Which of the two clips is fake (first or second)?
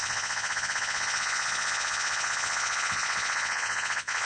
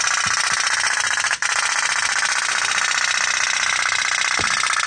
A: first